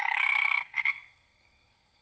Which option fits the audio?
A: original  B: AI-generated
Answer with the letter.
B